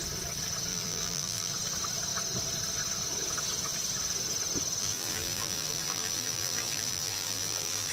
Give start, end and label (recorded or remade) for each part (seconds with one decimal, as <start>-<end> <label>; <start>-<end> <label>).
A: 0.0-0.7 recorded; 0.7-1.5 remade; 1.5-4.8 recorded; 4.8-7.9 remade